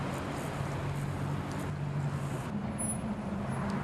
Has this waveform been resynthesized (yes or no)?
no